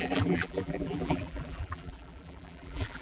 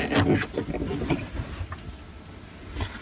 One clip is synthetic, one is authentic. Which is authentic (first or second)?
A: second